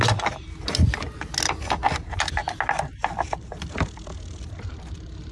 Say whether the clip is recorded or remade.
recorded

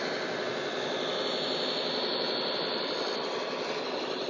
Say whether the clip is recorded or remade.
recorded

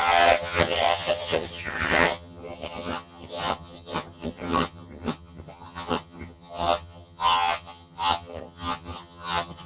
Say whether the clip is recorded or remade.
remade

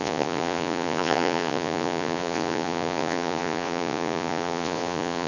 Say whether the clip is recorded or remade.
remade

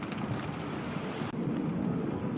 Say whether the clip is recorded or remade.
recorded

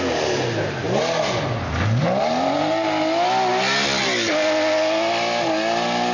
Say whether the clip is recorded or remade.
recorded